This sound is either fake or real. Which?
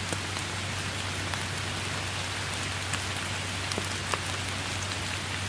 real